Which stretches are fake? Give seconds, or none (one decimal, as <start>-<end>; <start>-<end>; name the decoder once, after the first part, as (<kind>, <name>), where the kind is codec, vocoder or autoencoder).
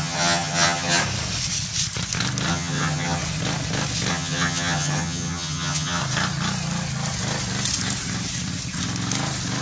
0.0-1.0 (vocoder, HiFi-GAN); 2.5-3.2; 4.1-6.0